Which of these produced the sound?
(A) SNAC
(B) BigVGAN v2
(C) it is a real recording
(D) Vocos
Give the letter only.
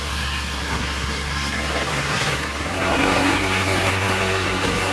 A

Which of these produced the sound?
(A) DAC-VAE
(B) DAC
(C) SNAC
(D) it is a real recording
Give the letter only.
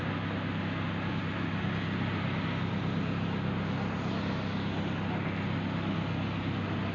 D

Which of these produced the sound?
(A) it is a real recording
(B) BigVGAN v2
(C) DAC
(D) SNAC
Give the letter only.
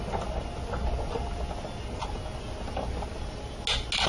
A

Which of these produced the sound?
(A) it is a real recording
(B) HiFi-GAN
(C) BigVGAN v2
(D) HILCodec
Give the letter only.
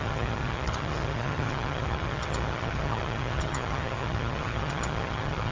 B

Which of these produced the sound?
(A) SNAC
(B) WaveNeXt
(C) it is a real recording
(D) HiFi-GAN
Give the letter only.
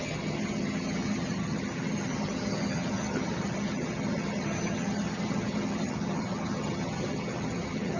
D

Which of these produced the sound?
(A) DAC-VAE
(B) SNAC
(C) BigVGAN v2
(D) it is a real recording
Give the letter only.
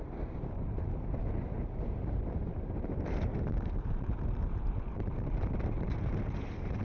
C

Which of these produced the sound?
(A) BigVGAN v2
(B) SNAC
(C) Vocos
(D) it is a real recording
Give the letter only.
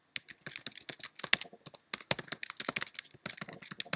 D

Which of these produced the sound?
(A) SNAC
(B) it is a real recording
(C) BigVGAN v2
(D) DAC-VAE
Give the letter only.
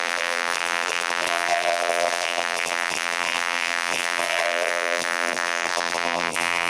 C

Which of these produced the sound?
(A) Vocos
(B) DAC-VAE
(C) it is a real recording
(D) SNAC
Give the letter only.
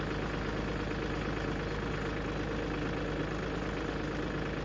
C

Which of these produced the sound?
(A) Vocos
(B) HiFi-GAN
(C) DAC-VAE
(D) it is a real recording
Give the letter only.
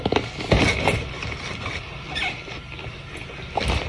D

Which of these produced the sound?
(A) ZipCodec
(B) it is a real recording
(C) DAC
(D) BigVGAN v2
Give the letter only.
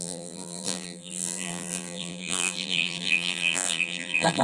D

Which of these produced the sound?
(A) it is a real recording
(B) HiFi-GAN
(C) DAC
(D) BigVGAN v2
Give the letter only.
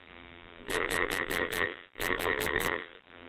D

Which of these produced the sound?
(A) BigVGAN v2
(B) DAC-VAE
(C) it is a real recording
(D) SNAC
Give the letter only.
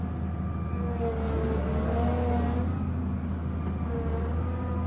C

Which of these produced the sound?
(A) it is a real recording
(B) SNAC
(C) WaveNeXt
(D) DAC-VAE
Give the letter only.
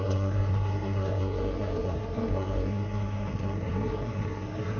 B